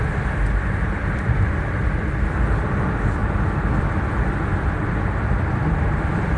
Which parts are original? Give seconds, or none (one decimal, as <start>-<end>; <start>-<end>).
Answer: 3.2-3.8